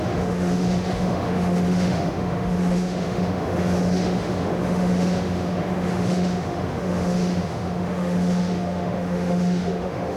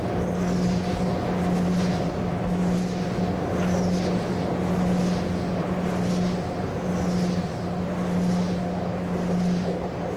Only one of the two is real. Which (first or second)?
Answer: second